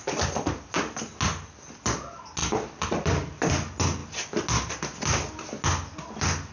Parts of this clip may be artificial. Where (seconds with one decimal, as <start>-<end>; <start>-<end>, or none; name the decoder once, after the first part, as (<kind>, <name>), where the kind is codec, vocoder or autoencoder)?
2.4-3.5 (vocoder, BigVGAN v2)